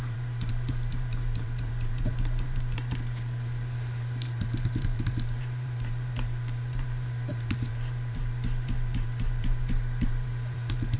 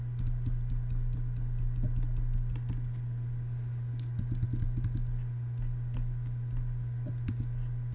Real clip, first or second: second